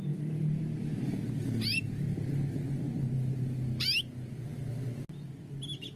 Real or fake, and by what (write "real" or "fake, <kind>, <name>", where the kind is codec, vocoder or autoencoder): real